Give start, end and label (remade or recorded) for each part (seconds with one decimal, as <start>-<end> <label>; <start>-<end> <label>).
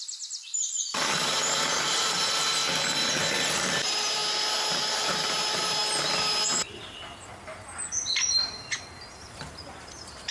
0.0-2.6 remade; 2.6-3.5 recorded; 3.5-4.2 remade; 4.2-4.9 recorded; 4.9-5.8 remade; 5.8-9.1 recorded; 9.1-10.3 remade